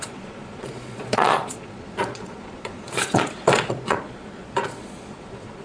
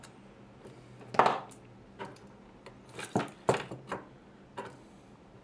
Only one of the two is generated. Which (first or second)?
first